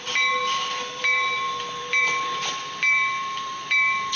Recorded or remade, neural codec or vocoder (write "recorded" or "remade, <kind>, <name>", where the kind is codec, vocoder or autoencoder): remade, vocoder, BigVGAN v2